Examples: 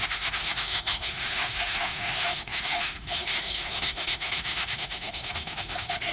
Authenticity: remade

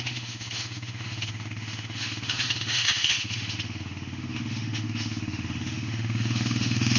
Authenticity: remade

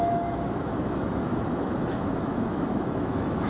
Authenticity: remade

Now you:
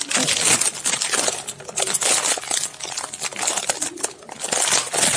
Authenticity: recorded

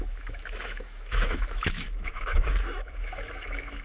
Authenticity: remade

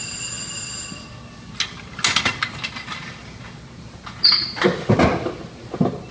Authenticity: recorded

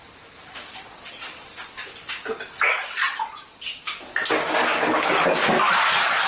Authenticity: recorded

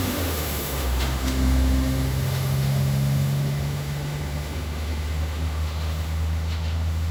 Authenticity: remade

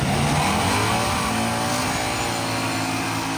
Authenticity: recorded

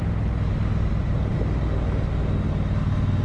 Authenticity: recorded